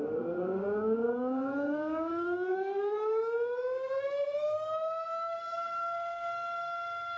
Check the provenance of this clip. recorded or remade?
remade